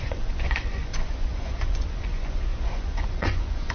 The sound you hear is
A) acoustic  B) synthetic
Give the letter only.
B